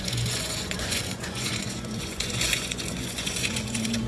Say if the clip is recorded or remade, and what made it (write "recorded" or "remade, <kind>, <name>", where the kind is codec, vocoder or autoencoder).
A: remade, vocoder, Vocos